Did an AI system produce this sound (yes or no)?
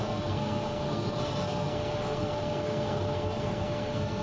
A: yes